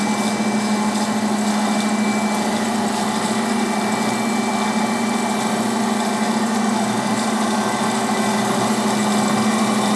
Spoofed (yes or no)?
no